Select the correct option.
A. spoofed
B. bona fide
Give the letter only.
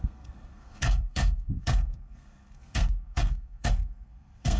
A